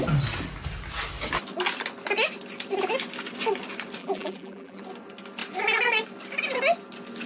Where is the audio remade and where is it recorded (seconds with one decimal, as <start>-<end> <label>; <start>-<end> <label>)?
0.0-4.0 recorded; 4.0-4.8 remade; 4.8-7.3 recorded